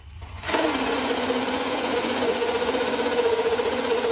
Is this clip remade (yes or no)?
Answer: yes